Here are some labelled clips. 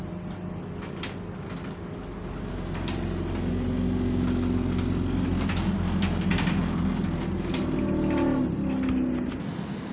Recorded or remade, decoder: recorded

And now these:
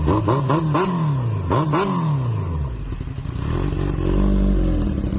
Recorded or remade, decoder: recorded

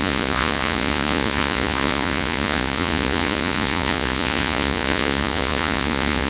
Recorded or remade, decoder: remade, vocoder, Vocos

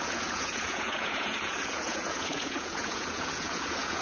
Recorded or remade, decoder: remade, vocoder, Vocos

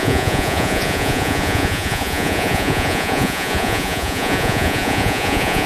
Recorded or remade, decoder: remade, vocoder, Vocos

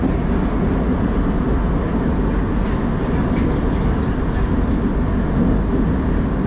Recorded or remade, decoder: recorded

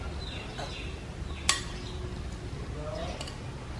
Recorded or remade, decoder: recorded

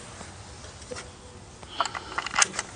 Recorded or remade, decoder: recorded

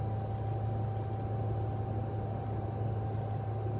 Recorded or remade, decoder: recorded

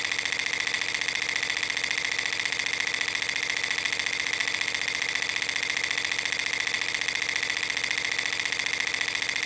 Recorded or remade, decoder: recorded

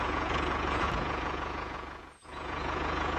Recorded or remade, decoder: remade, vocoder, Vocos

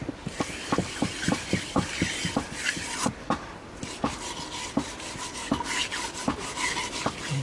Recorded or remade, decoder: recorded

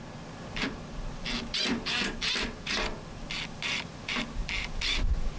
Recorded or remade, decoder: recorded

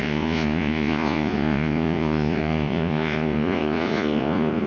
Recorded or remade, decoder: remade, vocoder, Vocos